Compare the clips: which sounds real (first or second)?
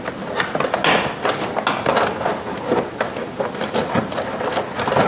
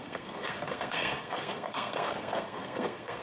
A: first